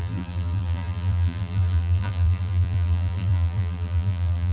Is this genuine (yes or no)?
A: no